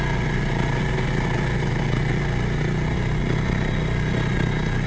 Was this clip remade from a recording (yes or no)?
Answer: no